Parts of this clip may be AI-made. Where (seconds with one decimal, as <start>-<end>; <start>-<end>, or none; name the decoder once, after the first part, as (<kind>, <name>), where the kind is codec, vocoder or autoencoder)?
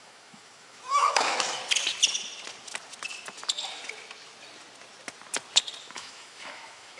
0.0-1.6 (autoencoder, DAC-VAE); 5.8-7.0